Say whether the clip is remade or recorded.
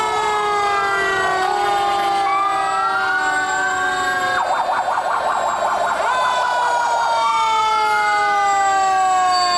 recorded